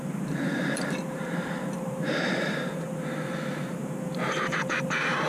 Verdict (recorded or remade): remade